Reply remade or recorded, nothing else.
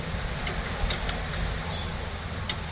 recorded